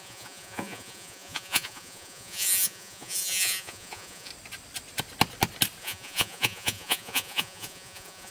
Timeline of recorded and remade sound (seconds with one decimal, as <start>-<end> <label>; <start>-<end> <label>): 0.0-4.3 remade; 4.3-5.8 recorded; 5.8-8.3 remade